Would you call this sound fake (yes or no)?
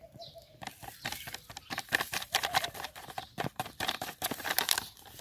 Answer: yes